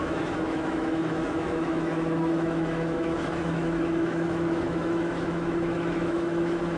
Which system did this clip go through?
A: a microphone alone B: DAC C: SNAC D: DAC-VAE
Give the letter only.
D